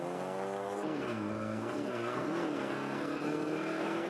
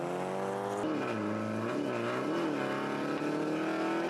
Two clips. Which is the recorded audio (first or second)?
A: second